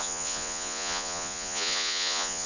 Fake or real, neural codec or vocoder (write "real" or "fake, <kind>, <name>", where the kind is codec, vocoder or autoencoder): fake, vocoder, Vocos